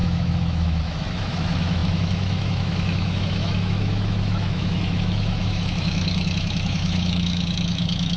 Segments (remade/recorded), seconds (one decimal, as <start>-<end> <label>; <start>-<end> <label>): 0.0-8.2 remade